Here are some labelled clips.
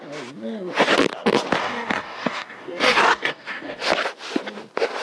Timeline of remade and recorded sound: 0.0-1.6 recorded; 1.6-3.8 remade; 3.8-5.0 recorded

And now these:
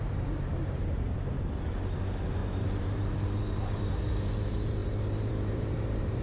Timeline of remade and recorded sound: 0.0-6.2 remade

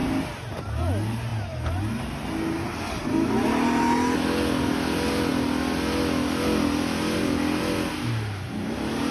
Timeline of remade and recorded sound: 0.0-9.1 recorded

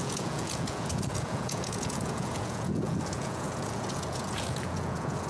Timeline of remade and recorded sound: 0.0-5.3 remade

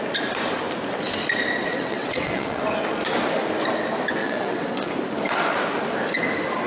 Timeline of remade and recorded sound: 0.0-1.7 recorded; 1.7-2.6 remade; 2.6-4.2 recorded; 4.2-4.9 remade; 4.9-6.7 recorded